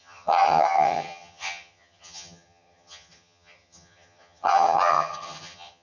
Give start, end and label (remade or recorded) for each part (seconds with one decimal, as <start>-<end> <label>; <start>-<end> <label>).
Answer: 0.0-5.8 remade